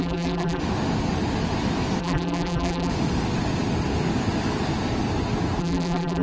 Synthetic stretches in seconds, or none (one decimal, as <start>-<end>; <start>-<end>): 0.0-0.6; 2.0-2.9; 5.6-6.2